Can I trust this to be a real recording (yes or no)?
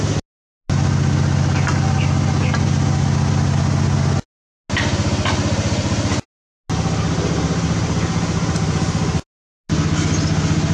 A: yes